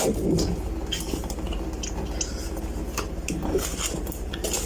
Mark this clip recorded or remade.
recorded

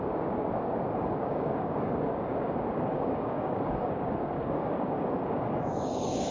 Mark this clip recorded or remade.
remade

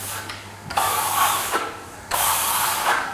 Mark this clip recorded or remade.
remade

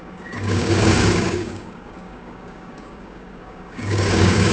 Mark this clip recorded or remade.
remade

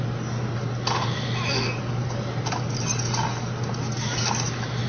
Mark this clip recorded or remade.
recorded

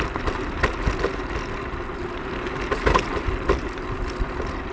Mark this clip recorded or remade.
recorded